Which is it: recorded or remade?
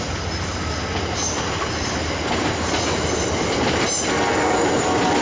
recorded